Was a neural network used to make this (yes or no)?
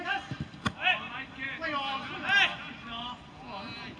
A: no